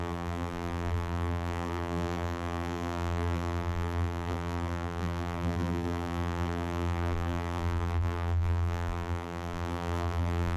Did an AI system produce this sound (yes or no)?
yes